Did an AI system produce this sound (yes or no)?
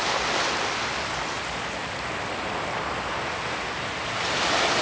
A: no